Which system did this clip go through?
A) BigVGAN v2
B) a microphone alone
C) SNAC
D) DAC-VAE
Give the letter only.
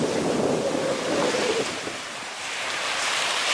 B